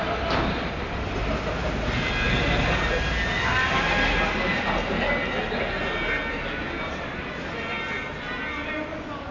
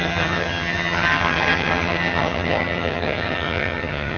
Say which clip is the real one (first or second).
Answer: first